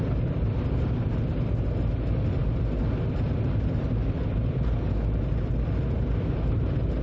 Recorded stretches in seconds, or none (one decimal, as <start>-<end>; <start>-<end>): 0.0-7.0